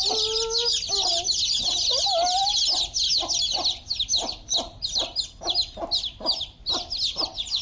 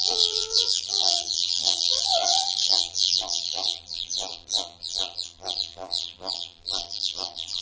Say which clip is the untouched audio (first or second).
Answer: first